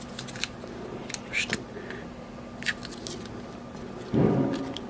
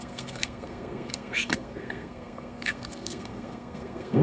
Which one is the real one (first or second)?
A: first